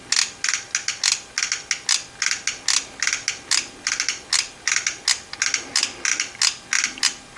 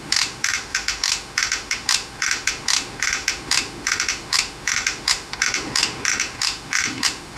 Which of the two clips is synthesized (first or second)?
second